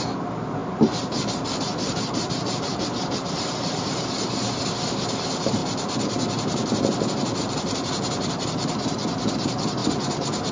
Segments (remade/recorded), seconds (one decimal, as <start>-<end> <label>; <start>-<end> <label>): 0.0-10.5 remade